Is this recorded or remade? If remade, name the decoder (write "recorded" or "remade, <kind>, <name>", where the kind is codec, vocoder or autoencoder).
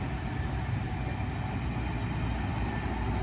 recorded